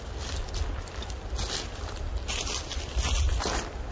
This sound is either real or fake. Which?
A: real